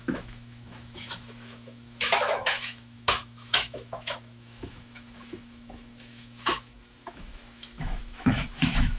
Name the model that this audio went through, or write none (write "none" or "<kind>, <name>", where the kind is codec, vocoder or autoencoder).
autoencoder, DAC-VAE